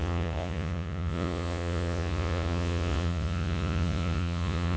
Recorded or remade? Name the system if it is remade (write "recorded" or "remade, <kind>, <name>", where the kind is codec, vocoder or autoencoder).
remade, vocoder, Vocos